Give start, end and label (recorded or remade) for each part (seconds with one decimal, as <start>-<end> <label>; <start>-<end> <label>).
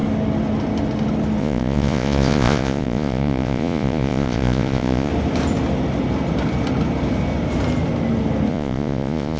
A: 0.0-1.4 recorded; 1.4-5.1 remade; 5.1-8.5 recorded; 8.5-9.4 remade